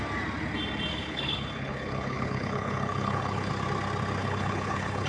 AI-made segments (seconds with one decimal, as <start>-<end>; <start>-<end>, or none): 0.9-3.5; 4.2-5.1